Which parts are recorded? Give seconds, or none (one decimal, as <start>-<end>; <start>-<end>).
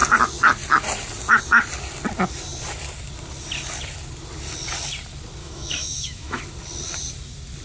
0.0-5.4; 6.4-7.6